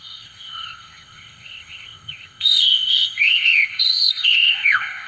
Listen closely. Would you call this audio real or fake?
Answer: fake